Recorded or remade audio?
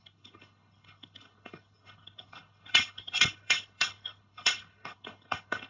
remade